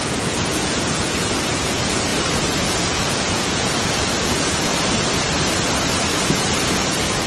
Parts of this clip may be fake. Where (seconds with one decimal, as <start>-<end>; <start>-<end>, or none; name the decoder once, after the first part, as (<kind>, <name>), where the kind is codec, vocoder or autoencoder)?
0.0-2.1 (vocoder, Vocos); 2.6-4.7; 6.1-7.3